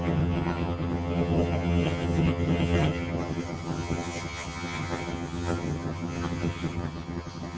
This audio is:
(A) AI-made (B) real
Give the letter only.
A